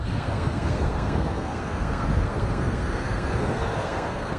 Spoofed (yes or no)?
yes